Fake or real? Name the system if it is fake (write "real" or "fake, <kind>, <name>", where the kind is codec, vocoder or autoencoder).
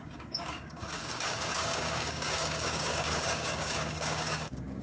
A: fake, codec, DAC